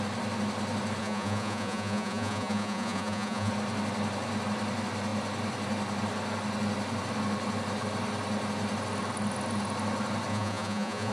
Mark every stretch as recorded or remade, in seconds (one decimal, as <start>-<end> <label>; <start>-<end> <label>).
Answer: 0.0-1.0 recorded; 1.0-3.5 remade; 3.5-10.3 recorded; 10.3-11.1 remade